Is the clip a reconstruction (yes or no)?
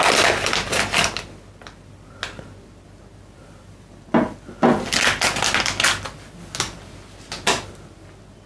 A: no